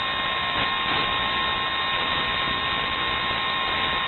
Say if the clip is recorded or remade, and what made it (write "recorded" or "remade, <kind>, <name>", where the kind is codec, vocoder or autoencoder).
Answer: recorded